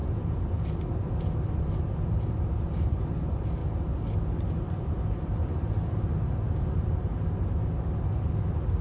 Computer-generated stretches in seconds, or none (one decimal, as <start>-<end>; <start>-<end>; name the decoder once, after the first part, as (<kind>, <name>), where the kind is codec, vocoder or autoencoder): 2.5-3.6 (vocoder, BigVGAN v2); 4.4-5.4

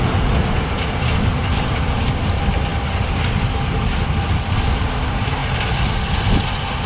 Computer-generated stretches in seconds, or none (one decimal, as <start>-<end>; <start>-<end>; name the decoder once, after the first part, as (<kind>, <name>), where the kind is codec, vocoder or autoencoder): 1.3-2.1 (vocoder, BigVGAN v2); 2.7-3.4

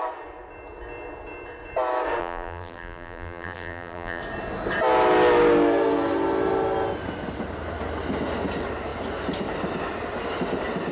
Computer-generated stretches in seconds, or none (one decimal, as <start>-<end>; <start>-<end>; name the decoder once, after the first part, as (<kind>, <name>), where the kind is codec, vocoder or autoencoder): 2.2-4.2 (vocoder, BigVGAN v2)

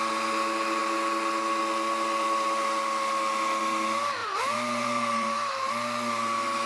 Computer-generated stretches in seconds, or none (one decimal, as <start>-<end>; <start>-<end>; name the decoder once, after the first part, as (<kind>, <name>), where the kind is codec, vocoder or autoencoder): 4.2-5.7 (vocoder, BigVGAN v2)

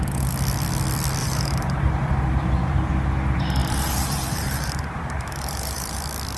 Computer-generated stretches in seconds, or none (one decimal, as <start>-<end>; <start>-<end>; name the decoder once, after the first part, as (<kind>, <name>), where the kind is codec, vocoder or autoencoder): 1.2-2.9 (vocoder, BigVGAN v2); 3.6-6.0

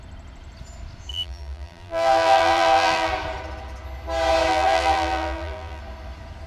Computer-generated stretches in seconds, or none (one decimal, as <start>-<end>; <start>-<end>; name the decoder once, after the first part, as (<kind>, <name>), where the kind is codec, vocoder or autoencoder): 1.1-3.1 (vocoder, BigVGAN v2); 4.5-5.8

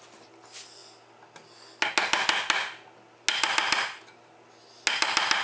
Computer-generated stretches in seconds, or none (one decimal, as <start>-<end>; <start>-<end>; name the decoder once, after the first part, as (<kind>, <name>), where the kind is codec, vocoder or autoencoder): none

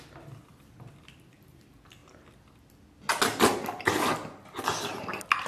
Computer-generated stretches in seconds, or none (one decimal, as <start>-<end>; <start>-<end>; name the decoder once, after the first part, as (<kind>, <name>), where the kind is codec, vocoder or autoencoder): none